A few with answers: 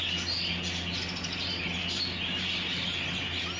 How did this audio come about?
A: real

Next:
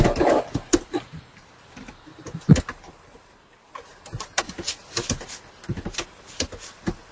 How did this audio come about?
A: real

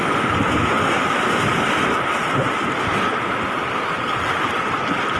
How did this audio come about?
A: real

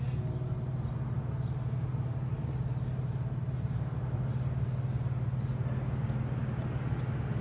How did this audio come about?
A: real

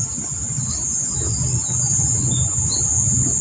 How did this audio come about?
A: real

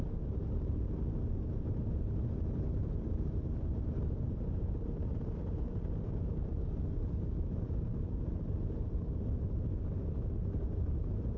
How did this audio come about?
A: fake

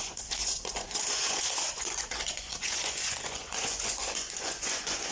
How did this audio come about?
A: fake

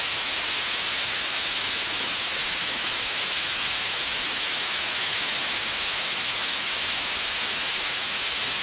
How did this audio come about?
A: fake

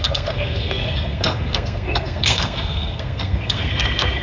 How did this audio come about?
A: fake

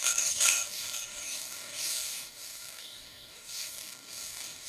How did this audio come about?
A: fake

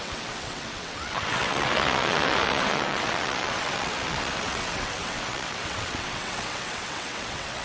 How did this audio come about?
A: fake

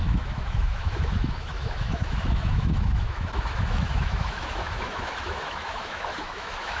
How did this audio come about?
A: fake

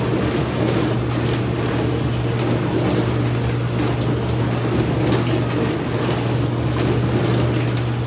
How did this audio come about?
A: real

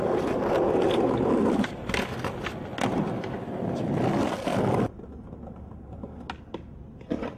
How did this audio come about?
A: real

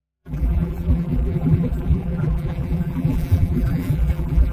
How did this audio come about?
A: fake